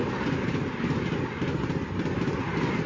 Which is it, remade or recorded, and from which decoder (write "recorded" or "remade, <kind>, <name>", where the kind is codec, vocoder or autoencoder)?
recorded